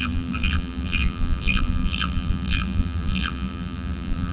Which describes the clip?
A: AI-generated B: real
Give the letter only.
A